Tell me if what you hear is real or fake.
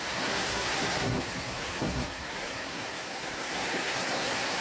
fake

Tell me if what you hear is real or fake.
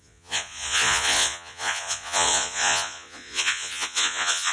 fake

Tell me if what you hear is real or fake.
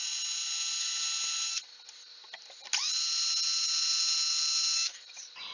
real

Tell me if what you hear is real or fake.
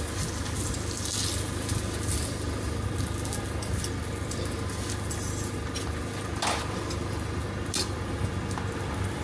real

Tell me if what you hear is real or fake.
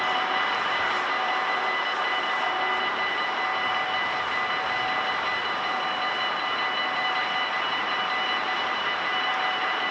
fake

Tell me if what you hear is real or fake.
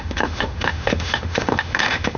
fake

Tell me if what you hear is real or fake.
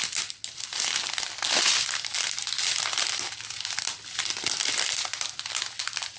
real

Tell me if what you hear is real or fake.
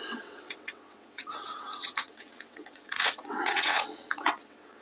fake